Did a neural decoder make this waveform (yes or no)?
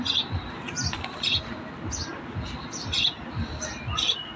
no